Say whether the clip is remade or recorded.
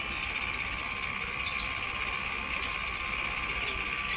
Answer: recorded